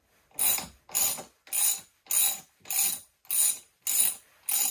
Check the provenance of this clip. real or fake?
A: real